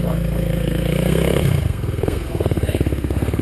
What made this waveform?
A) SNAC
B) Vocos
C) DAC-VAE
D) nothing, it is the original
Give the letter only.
A